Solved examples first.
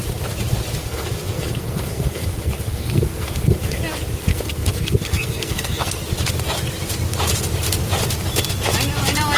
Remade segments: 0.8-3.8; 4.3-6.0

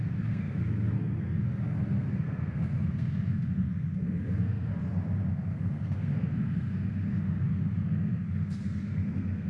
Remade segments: 0.0-4.7; 5.3-9.5

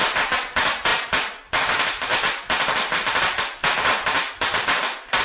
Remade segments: none

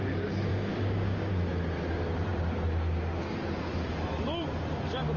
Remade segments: 0.5-1.3

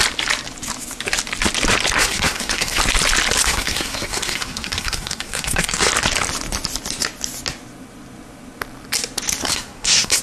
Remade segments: 2.0-2.8; 3.4-5.9; 9.4-10.2

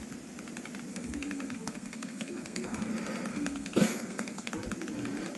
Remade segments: 0.9-2.9; 3.3-4.5

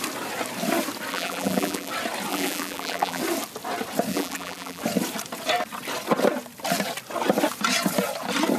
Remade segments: 1.1-1.9; 2.3-3.2; 4.1-4.8